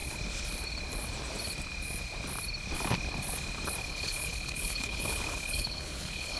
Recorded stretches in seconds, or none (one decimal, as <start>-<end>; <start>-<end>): 0.0-3.8